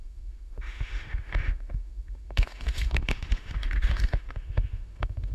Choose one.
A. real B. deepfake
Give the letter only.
B